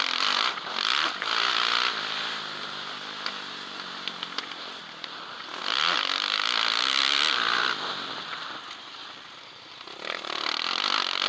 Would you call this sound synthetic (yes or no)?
no